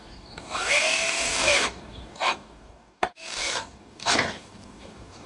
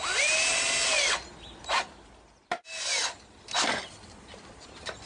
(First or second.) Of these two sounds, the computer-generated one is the first